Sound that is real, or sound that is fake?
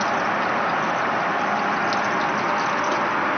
real